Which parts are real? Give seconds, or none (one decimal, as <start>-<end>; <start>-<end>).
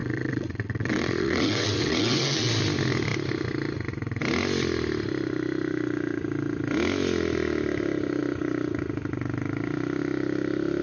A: 2.5-10.8